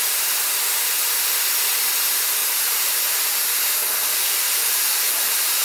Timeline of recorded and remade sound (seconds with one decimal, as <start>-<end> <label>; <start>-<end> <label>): 0.0-2.4 recorded; 2.4-2.9 remade; 2.9-4.2 recorded; 4.2-5.6 remade